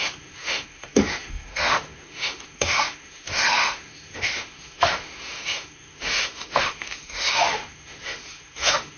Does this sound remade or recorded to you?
remade